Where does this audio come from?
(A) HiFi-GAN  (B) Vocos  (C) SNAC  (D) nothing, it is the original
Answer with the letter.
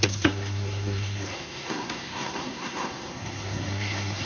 C